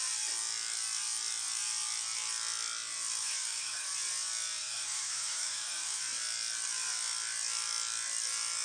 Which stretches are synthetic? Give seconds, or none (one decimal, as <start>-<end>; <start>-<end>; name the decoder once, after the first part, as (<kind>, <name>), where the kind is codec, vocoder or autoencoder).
3.2-3.9 (autoencoder, DAC-VAE); 4.6-6.0